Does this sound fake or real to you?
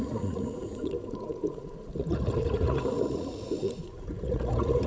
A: fake